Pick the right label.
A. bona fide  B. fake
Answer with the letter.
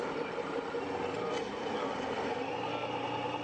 A